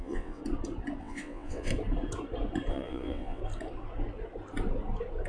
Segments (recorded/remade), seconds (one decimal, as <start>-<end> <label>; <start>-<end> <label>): 0.0-0.4 remade; 0.4-1.0 recorded; 1.0-1.7 remade; 1.7-2.7 recorded; 2.7-3.4 remade; 3.4-5.3 recorded